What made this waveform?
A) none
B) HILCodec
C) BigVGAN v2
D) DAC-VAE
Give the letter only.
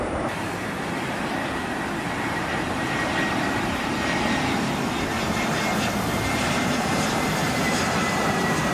C